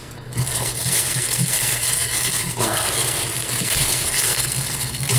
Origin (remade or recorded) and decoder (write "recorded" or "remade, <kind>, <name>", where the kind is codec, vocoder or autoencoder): remade, codec, SNAC